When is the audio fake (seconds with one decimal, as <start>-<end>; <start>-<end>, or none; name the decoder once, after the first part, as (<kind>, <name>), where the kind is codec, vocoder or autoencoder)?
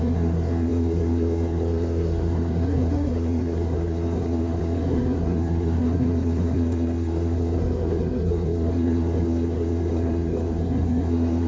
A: 0.0-11.5 (codec, SNAC)